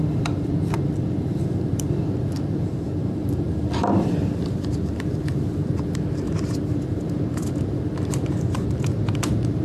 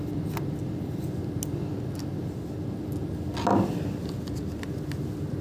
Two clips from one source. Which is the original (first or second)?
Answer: second